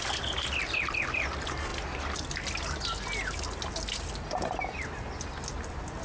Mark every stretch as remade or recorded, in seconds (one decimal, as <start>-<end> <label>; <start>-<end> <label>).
0.0-6.0 recorded